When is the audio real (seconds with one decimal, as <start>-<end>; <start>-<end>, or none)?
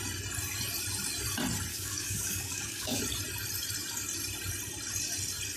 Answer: 0.0-1.7; 3.0-5.6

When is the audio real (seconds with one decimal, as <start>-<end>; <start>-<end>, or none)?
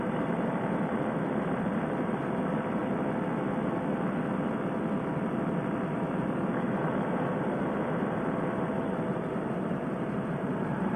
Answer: 2.8-5.9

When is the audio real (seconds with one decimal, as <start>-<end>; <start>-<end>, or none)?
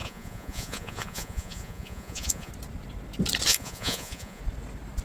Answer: 2.5-3.5; 4.4-5.0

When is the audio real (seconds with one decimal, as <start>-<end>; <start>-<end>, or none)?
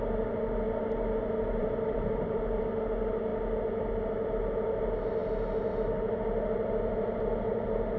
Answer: 0.0-1.6; 2.6-8.0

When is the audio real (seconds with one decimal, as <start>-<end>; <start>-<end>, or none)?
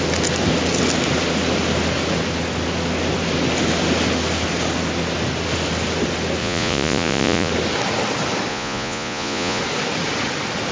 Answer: 0.0-6.4; 7.5-8.5; 9.6-10.7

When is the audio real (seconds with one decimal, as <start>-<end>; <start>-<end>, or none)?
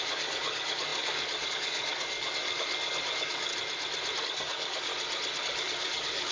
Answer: 3.5-4.2; 4.9-5.4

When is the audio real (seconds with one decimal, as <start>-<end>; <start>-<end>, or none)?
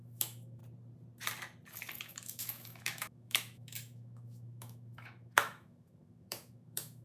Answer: 0.6-2.0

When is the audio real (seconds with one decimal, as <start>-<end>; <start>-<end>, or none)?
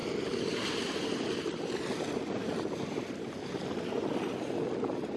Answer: 0.0-5.2